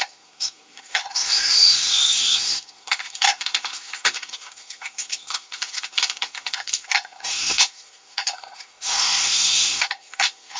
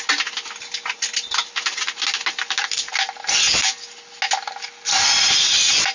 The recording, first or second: second